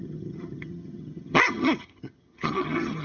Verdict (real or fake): fake